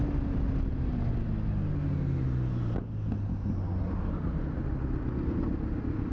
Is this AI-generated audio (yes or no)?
no